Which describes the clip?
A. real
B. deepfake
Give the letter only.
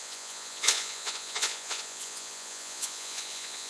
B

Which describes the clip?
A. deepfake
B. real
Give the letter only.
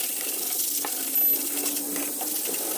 B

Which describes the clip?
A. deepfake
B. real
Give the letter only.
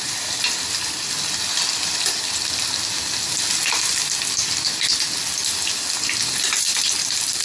B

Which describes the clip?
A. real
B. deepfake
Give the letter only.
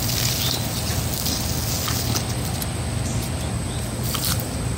A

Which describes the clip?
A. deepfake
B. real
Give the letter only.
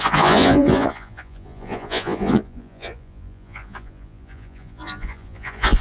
A